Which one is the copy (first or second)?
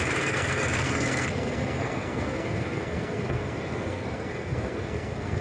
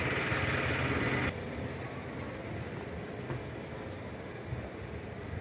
first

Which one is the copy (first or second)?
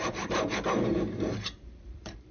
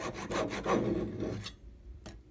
first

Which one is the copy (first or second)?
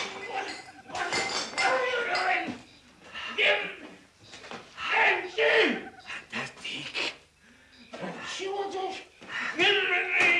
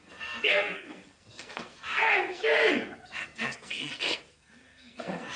second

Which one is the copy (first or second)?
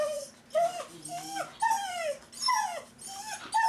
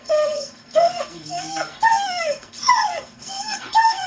second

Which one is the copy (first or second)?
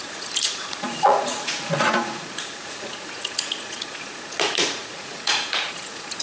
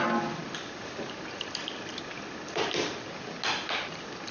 first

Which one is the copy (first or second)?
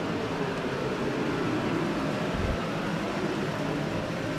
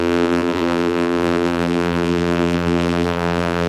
second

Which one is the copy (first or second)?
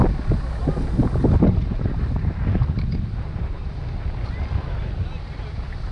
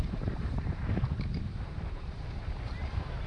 second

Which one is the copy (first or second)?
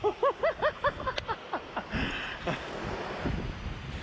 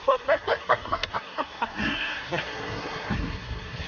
second